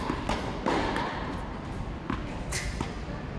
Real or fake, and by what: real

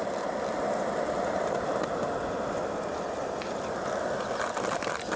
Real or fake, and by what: real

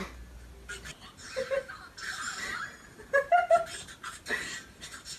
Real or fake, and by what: real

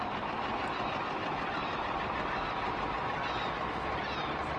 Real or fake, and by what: real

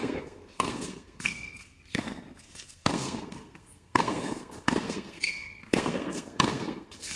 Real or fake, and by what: fake, codec, SNAC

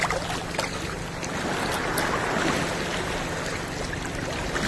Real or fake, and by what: real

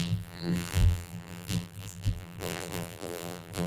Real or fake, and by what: fake, vocoder, BigVGAN v2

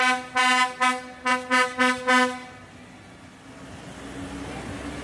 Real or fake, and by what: real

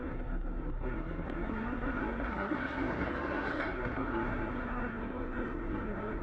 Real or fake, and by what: fake, codec, SNAC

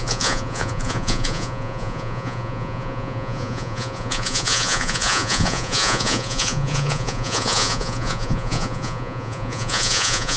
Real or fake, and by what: fake, vocoder, Vocos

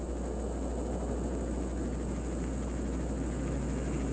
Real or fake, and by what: fake, autoencoder, DAC-VAE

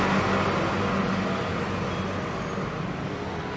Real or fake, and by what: real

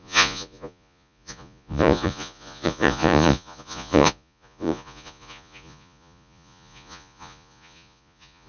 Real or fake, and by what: fake, vocoder, Vocos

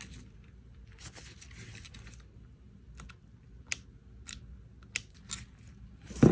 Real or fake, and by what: real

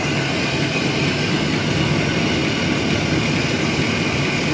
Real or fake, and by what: real